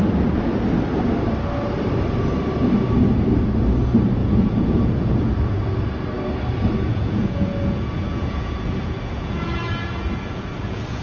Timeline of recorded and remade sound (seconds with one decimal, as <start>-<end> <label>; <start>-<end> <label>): 0.0-4.2 recorded; 4.2-5.3 remade; 5.3-6.9 recorded; 6.9-11.0 remade